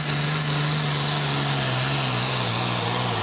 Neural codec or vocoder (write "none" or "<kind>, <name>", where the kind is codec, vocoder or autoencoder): none